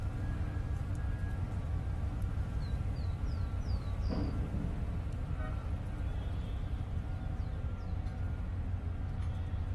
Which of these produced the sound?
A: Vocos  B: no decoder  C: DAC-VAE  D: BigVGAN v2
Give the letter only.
B